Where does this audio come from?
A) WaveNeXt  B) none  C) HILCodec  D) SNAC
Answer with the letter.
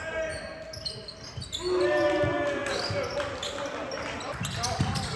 B